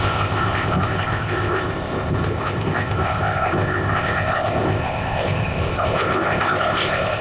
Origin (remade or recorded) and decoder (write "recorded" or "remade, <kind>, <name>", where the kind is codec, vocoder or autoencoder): remade, codec, ZipCodec